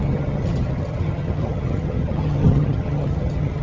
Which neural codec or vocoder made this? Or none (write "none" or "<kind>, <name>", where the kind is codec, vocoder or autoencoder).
vocoder, HiFi-GAN